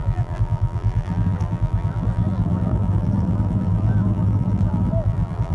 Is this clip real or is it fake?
fake